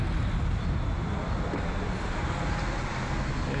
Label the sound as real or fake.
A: real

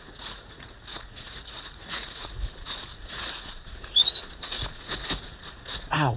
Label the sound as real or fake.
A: fake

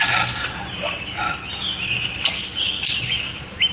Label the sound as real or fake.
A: real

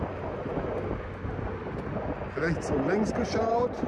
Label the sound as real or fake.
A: real